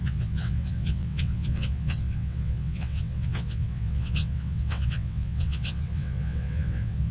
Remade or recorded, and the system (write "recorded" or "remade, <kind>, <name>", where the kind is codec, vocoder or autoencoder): remade, vocoder, WaveNeXt